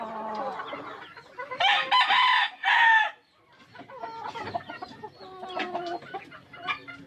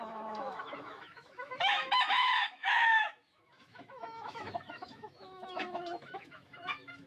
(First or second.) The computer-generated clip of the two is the second